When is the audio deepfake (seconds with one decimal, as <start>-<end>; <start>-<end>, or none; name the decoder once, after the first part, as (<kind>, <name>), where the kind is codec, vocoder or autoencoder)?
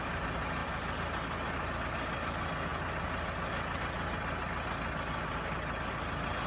none